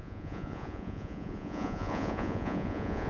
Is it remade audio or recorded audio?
remade